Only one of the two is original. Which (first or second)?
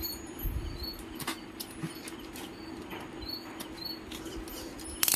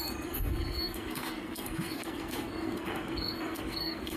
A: first